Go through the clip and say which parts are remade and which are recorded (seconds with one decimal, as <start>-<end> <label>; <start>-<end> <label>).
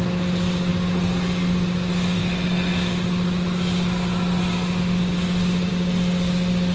0.0-6.7 recorded